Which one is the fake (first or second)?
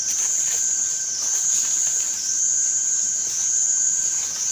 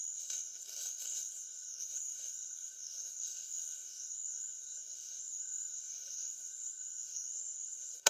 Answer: second